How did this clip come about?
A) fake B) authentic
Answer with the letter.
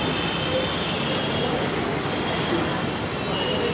B